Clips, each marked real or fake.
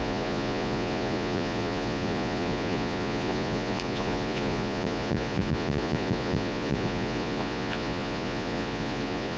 fake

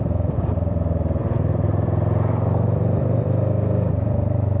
fake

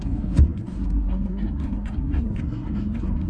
fake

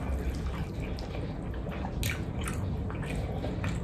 real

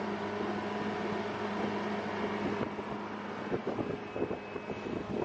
real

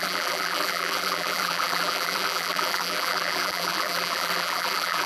fake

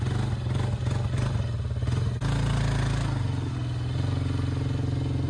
real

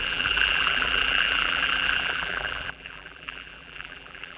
fake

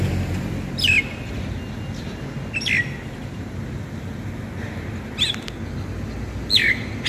real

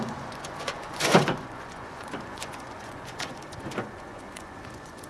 fake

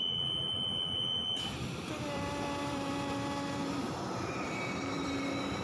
fake